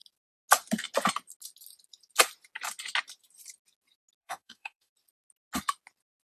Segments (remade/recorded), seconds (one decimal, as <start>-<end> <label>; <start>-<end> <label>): 0.0-4.2 recorded; 4.2-4.9 remade; 4.9-6.3 recorded